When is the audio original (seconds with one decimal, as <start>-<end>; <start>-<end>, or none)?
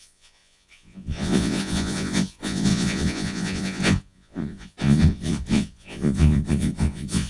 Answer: none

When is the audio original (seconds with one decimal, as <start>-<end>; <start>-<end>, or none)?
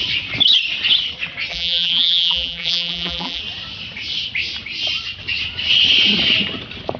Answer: 0.0-1.5; 3.4-7.0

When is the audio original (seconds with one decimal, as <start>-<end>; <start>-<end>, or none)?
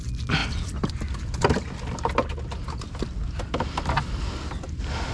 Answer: 0.0-5.1